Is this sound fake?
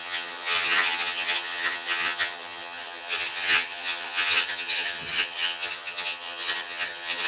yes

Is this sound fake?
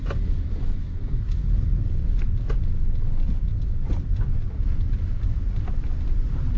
no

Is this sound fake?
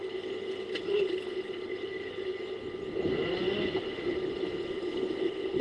no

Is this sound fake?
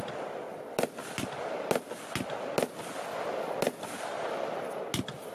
no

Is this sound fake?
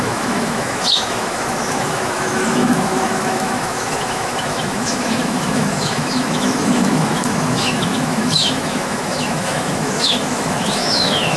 yes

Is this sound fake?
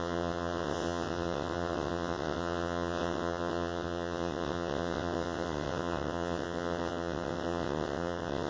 yes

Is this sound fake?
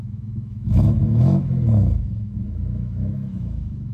yes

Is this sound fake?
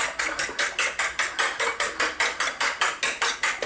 no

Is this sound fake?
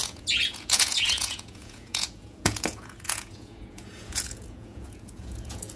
yes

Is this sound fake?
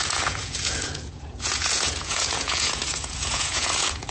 yes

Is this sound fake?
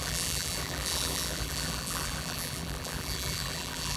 yes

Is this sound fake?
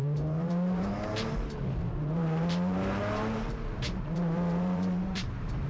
yes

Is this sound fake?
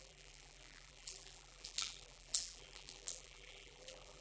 yes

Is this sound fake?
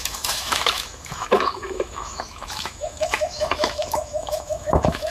yes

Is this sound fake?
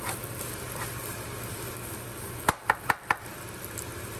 no